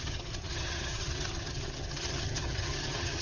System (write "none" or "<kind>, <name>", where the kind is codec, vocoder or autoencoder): vocoder, HiFi-GAN